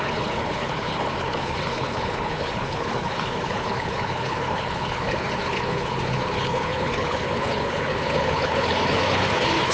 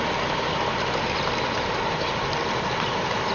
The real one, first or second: second